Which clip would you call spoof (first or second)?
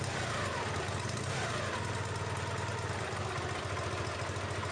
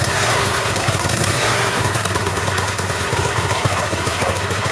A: second